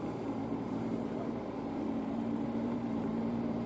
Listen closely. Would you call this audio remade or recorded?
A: remade